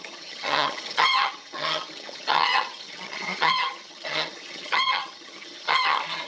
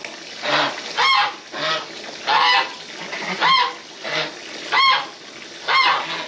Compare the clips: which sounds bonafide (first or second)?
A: second